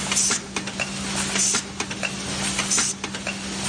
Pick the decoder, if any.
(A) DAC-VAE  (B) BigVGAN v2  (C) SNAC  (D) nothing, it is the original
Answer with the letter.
D